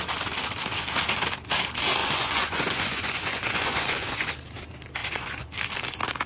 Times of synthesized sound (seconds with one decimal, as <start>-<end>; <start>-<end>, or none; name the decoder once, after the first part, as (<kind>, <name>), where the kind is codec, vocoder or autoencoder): 2.0-4.3 (vocoder, Vocos); 5.0-5.5